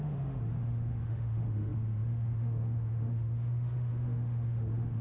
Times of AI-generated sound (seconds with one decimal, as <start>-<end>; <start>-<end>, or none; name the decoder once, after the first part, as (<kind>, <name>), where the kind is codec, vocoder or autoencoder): 0.0-5.0 (autoencoder, DAC-VAE)